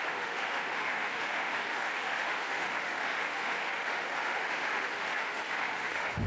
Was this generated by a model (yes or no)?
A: yes